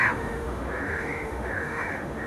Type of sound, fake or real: fake